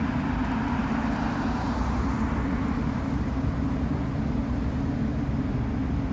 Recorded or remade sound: recorded